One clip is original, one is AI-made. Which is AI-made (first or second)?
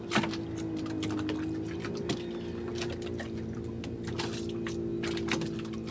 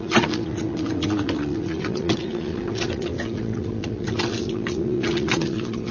second